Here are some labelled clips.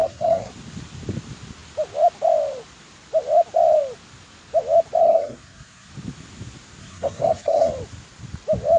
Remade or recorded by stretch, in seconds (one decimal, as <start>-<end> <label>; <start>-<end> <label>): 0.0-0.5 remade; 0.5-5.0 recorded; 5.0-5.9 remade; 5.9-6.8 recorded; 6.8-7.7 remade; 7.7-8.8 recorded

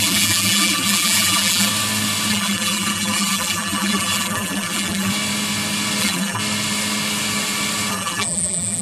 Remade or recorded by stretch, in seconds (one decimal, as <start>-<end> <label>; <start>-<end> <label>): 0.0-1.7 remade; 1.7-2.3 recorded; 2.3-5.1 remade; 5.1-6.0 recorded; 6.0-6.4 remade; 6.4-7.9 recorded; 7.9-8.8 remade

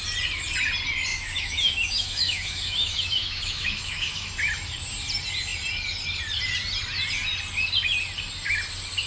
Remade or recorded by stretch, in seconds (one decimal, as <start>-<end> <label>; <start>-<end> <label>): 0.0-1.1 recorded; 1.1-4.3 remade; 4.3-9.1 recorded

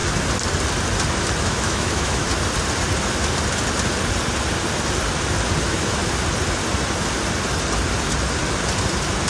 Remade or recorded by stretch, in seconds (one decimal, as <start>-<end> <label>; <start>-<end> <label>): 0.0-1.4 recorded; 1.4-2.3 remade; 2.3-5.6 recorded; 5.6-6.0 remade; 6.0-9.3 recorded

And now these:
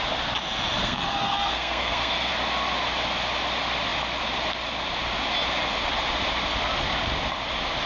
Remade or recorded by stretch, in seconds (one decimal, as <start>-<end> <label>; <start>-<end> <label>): 0.0-0.8 recorded; 0.8-2.3 remade; 2.3-7.9 recorded